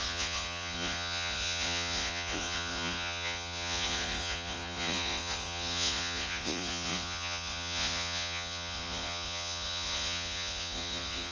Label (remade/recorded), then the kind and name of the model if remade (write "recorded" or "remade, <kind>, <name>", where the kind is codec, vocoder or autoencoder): remade, vocoder, Vocos